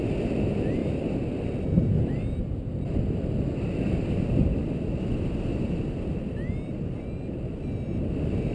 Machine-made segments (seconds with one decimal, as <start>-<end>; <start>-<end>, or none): none